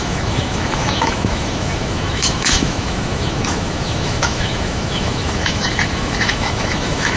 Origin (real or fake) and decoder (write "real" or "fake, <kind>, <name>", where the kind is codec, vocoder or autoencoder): fake, autoencoder, DAC-VAE